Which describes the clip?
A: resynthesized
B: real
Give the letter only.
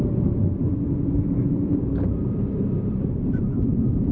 A